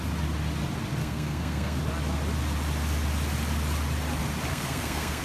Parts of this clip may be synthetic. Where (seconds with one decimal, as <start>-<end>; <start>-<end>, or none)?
1.0-1.8; 4.5-5.2